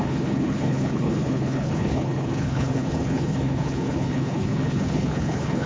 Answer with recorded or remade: remade